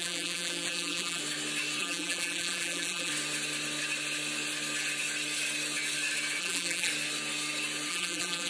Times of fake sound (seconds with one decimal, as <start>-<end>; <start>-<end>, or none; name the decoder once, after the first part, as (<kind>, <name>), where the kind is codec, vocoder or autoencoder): 0.0-1.2 (vocoder, BigVGAN v2); 1.8-3.1; 6.4-6.9; 7.9-8.5